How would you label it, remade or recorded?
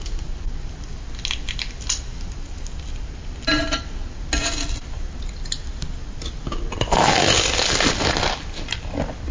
recorded